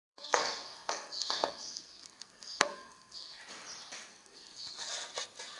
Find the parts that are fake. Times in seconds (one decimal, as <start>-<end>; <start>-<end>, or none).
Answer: 0.0-3.4; 4.1-4.9